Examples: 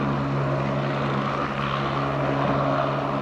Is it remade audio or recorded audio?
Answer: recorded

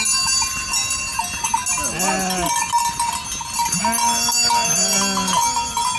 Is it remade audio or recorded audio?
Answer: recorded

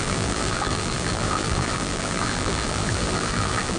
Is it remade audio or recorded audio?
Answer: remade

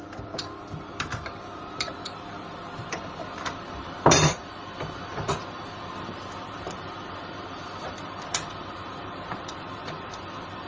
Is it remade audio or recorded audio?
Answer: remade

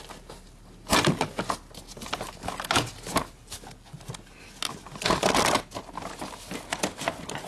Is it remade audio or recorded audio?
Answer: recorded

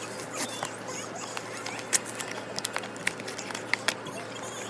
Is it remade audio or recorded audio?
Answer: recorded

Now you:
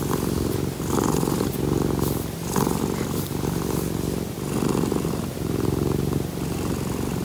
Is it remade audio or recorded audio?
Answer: recorded